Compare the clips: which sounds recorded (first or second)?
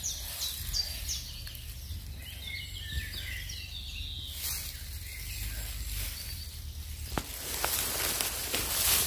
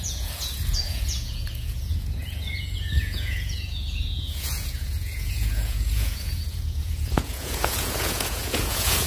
first